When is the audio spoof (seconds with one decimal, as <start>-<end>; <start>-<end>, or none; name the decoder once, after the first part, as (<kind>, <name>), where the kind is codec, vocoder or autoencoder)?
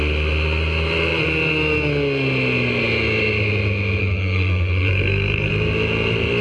4.0-5.5 (codec, SNAC)